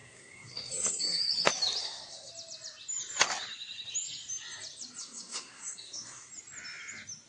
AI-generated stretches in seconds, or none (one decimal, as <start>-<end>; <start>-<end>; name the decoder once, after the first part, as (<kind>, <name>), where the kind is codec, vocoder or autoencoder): 0.0-1.2 (codec, SNAC); 1.8-2.3; 5.0-6.3

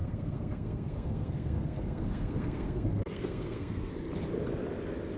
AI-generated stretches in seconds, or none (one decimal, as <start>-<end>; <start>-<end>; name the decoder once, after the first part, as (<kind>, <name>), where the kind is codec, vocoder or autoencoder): 0.0-3.9 (codec, SNAC)

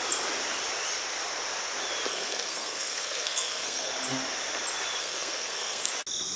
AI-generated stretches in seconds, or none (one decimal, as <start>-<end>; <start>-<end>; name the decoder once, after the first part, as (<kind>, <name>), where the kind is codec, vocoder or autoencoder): 2.1-3.9 (codec, SNAC); 5.0-5.9

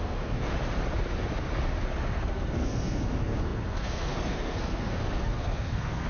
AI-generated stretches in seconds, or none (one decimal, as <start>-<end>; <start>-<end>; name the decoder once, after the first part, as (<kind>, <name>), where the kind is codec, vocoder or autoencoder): 0.0-0.5 (codec, SNAC); 2.1-6.1

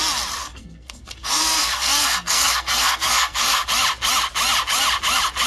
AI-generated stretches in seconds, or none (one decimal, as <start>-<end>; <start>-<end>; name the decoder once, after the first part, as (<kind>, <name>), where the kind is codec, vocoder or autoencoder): 0.4-3.7 (codec, SNAC)